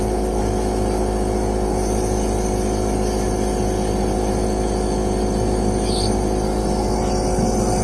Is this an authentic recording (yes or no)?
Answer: yes